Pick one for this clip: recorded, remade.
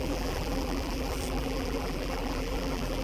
remade